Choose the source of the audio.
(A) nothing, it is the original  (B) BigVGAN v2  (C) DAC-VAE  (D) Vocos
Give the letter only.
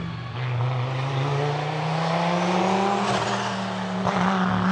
A